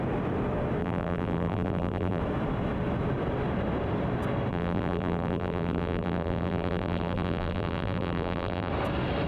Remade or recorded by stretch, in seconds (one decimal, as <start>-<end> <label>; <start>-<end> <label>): 0.0-0.8 recorded; 0.8-2.2 remade; 2.2-4.5 recorded; 4.5-8.7 remade; 8.7-9.3 recorded